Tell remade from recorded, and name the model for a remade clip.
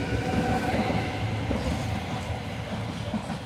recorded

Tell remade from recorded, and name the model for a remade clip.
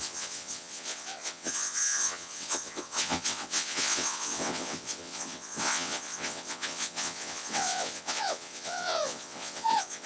remade, vocoder, WaveNeXt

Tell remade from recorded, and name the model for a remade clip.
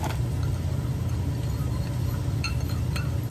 recorded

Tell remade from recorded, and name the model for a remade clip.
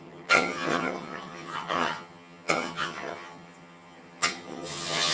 remade, vocoder, HiFi-GAN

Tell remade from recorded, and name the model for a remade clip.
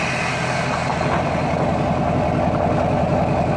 recorded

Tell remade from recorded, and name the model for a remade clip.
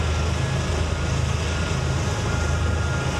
recorded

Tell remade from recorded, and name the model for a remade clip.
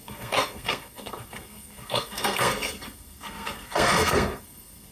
remade, codec, SNAC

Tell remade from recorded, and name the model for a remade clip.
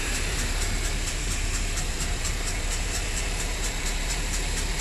remade, vocoder, BigVGAN v2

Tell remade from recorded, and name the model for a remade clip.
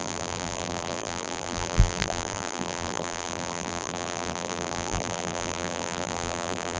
remade, vocoder, BigVGAN v2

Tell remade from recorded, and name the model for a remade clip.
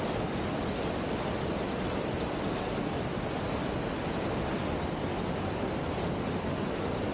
recorded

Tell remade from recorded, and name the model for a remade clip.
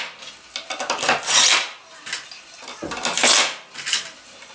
recorded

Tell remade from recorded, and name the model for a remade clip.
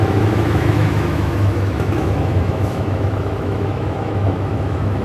remade, autoencoder, DAC-VAE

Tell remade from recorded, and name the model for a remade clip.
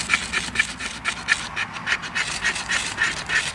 recorded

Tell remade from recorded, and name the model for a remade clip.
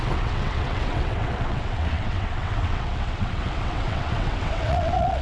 remade, vocoder, WaveNeXt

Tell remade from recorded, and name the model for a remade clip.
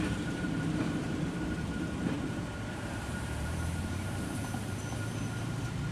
remade, vocoder, BigVGAN v2